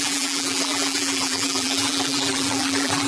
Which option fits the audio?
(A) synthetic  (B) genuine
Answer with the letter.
A